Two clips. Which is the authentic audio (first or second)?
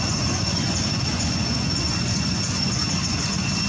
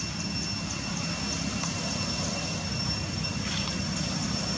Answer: second